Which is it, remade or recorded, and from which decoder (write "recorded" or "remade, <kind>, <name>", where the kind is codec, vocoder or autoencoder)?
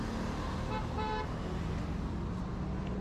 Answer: recorded